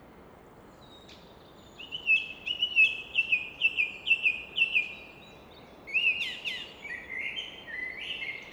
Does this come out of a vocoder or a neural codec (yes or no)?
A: no